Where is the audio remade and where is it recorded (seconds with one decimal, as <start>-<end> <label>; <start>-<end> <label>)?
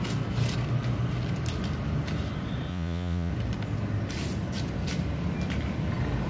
0.0-2.7 recorded; 2.7-3.3 remade; 3.3-6.3 recorded